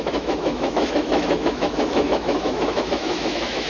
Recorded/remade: remade